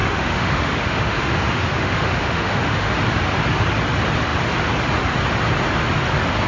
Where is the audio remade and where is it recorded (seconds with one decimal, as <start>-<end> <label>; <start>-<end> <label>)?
0.0-2.9 remade; 2.9-6.5 recorded